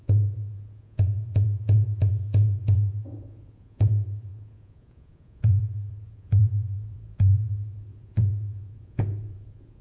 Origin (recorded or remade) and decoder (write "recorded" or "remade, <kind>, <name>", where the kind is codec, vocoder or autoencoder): remade, vocoder, Vocos